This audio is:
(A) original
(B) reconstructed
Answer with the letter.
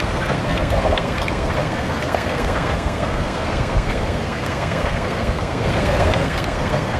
B